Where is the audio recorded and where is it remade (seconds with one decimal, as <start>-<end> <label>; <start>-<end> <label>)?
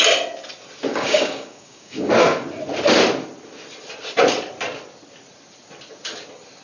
0.0-0.9 recorded; 0.9-2.1 remade; 2.1-6.6 recorded